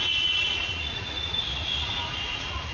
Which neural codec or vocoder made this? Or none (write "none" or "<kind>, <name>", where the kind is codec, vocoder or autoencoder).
vocoder, Vocos